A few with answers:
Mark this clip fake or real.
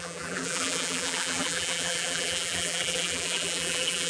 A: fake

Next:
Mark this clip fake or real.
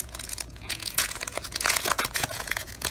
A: fake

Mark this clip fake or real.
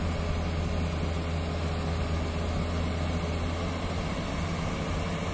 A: real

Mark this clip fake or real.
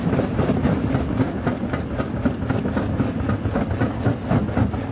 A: real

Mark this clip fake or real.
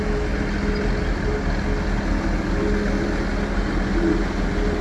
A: real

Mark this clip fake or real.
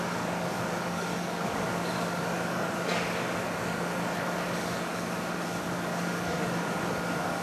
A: fake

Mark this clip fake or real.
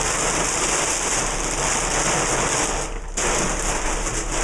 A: real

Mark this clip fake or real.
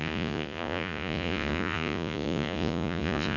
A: fake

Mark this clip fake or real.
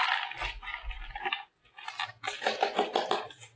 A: real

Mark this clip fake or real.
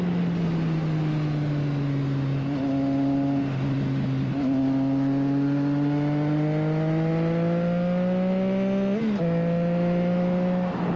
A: real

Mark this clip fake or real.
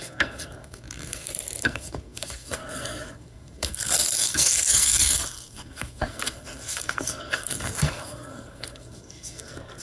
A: fake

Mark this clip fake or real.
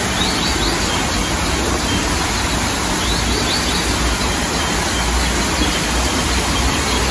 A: real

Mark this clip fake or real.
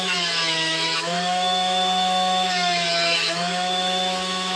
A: fake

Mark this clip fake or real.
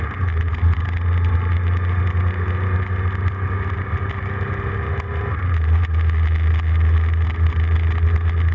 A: real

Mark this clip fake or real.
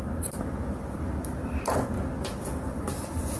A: real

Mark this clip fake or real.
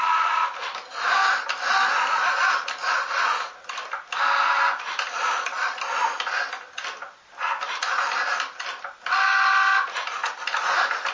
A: real